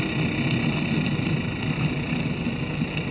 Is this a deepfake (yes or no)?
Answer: no